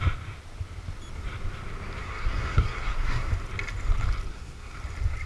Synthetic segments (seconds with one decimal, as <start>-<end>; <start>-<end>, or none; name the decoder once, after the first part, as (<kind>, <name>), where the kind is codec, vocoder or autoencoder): 2.0-3.3 (codec, SNAC); 4.3-4.8